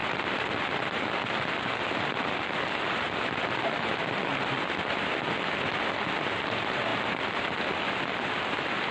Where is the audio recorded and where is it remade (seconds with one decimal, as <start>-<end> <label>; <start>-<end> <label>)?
0.0-8.9 recorded